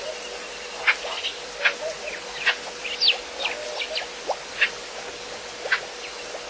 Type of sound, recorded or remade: recorded